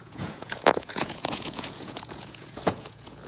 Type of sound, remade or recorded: remade